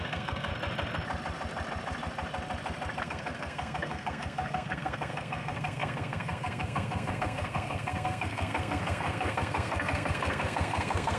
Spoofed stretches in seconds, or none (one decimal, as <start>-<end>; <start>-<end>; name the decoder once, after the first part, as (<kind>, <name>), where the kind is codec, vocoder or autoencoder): 0.0-0.5 (codec, SNAC); 3.0-11.2